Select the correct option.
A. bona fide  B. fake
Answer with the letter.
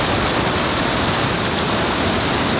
A